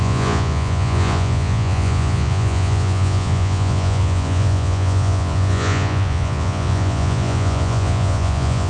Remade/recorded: remade